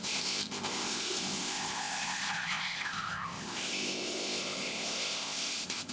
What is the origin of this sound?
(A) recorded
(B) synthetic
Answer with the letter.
B